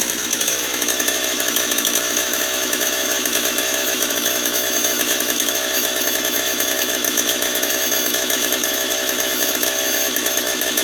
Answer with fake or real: fake